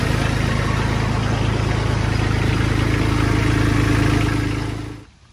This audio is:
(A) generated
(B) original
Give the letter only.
B